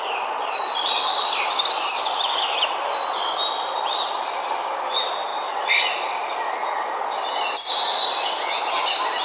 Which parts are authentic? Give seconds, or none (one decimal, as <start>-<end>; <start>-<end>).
0.0-5.3; 5.9-9.2